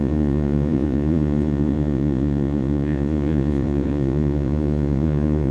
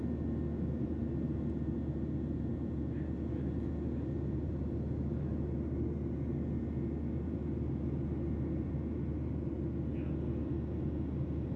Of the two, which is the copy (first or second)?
first